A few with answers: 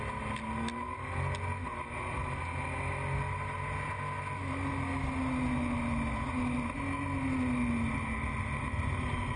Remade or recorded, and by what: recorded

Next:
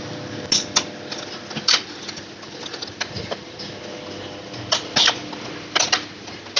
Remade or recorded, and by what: recorded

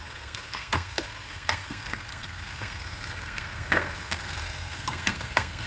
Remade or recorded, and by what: remade, codec, SNAC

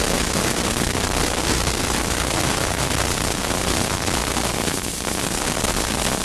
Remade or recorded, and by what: remade, codec, SNAC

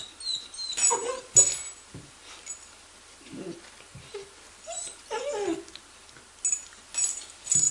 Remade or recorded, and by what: recorded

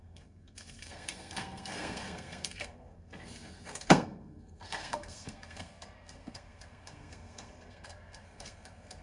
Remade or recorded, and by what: remade, codec, SNAC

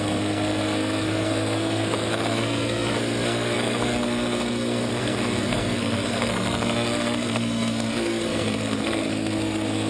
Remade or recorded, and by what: remade, codec, SNAC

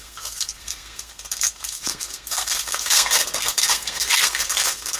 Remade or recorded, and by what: remade, codec, SNAC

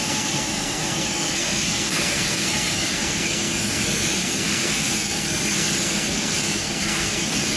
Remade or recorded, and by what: remade, codec, SNAC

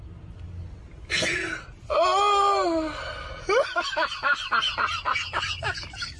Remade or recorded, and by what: recorded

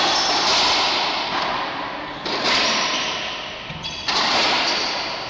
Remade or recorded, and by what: recorded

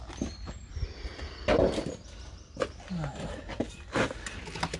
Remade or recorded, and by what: recorded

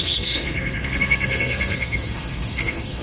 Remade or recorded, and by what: remade, codec, SNAC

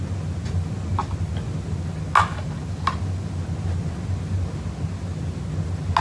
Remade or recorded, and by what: recorded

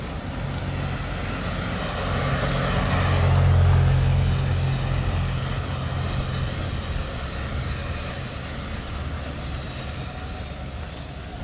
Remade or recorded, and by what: recorded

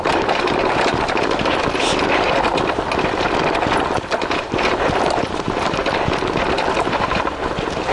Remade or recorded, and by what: recorded